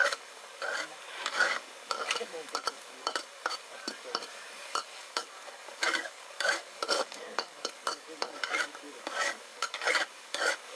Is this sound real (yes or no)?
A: no